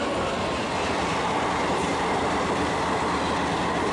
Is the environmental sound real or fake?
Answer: real